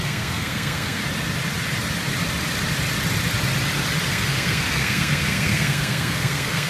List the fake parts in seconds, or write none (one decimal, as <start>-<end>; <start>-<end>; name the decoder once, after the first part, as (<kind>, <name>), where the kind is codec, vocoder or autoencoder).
0.0-1.0 (codec, SNAC); 4.1-6.7